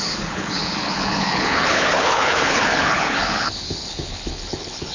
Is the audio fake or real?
fake